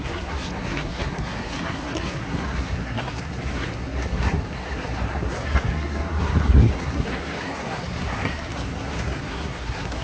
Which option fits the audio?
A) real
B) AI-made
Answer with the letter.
B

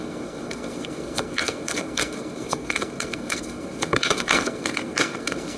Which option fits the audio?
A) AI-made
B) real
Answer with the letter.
A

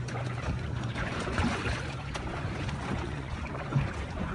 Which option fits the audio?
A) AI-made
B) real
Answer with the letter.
A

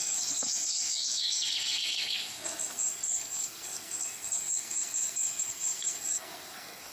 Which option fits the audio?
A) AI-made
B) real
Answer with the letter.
A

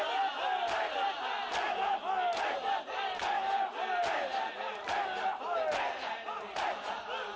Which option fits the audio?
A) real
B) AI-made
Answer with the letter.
A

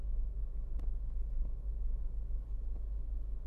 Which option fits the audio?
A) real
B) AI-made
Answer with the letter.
A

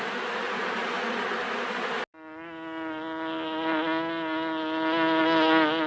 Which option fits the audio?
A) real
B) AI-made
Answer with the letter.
A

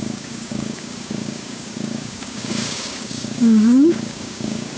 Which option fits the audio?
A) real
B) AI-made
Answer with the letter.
B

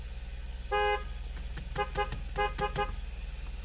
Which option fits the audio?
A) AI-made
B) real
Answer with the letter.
B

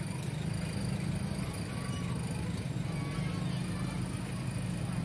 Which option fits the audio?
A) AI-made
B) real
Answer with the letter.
B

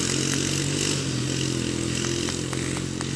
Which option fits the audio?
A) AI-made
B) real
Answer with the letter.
B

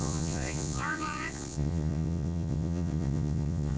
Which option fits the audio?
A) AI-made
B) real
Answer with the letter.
A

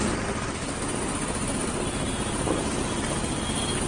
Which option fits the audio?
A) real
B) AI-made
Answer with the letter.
A